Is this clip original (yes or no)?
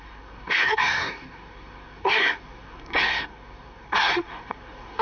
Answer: no